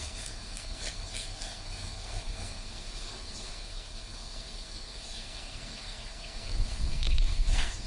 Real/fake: fake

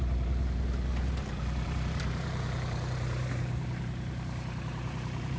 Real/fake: fake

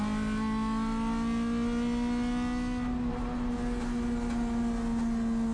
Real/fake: real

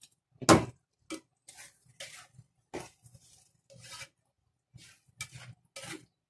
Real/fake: real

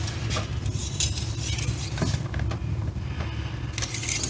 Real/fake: real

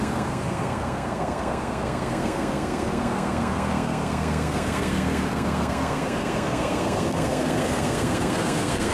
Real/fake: fake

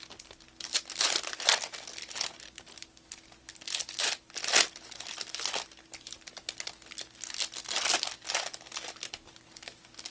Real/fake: real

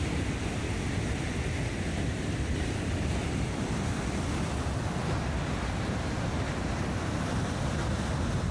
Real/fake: real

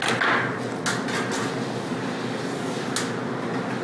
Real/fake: real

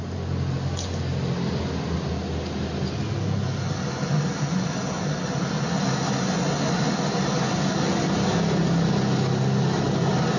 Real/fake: real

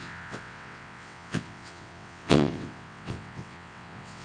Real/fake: fake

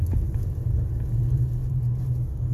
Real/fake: real